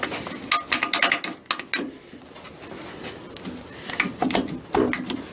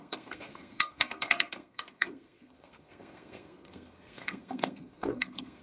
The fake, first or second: second